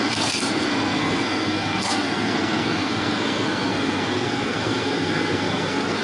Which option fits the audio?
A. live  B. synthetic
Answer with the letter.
B